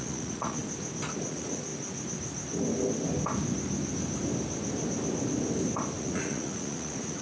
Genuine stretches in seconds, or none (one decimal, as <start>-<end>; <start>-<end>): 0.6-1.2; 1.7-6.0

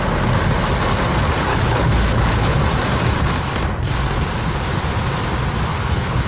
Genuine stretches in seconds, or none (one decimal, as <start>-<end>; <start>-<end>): 0.0-1.5; 2.6-5.7

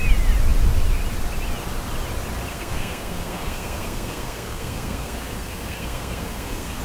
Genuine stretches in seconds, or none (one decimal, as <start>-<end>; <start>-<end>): 0.0-2.5

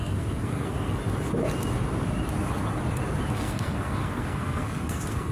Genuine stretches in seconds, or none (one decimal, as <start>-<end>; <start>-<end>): 1.0-3.3

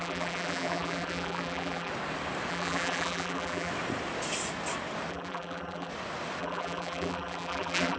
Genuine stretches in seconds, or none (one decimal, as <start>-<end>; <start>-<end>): 1.9-2.5; 3.7-5.1; 5.9-6.4